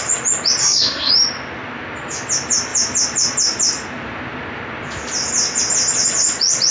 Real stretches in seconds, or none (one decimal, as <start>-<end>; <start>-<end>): 0.0-0.6; 1.1-6.7